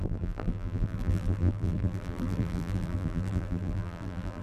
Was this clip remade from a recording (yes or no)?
yes